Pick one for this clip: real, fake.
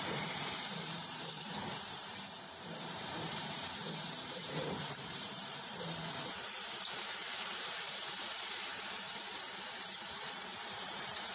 fake